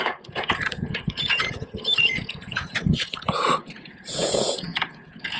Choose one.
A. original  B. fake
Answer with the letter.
B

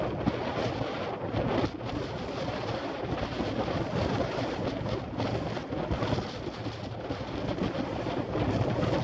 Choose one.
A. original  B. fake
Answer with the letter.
A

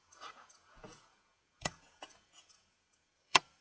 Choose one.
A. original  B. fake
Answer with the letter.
B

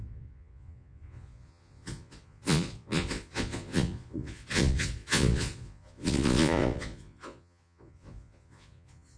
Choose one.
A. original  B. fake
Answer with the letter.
B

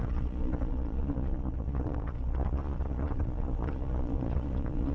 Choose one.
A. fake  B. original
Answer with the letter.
A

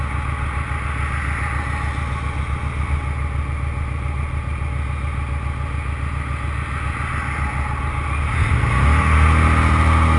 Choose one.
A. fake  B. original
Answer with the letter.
B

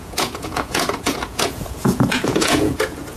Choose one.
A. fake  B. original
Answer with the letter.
A